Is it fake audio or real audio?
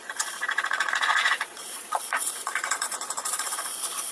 fake